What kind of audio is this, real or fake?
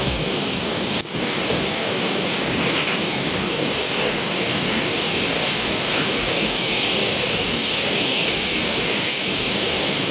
fake